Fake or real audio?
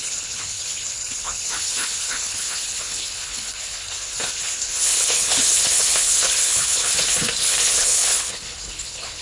fake